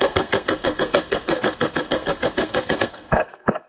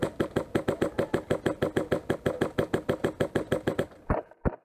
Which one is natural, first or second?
second